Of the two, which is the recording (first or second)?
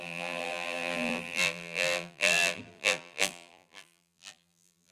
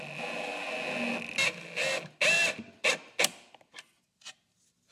second